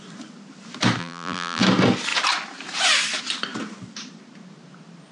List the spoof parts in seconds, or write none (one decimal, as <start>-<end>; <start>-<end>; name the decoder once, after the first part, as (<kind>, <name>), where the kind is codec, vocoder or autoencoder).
1.0-1.6 (vocoder, BigVGAN v2)